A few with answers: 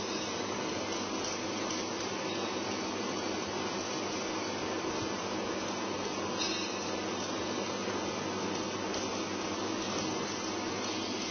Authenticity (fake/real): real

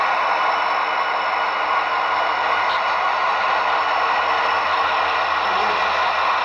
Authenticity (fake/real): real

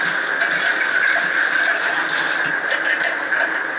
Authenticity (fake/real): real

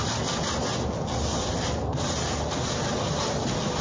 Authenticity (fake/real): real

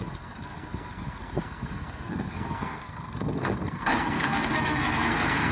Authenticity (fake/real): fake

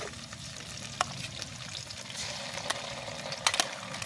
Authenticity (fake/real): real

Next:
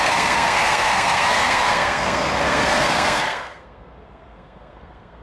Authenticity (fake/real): fake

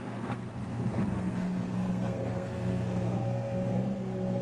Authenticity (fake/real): fake